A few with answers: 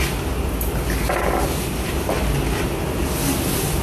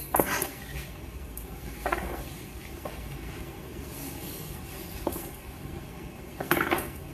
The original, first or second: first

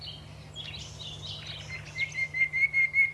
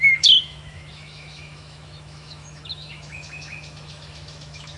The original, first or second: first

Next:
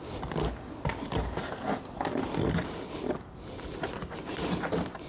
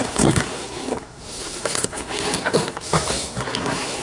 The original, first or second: first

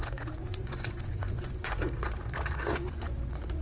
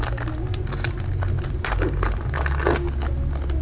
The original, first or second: second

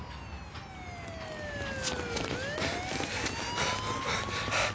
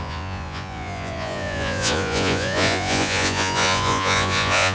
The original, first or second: first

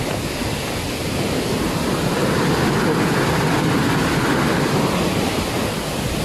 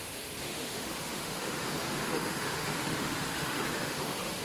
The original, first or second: first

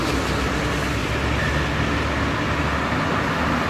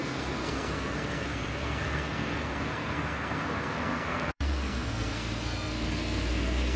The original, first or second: first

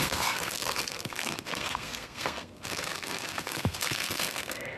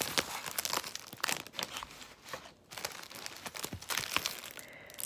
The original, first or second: second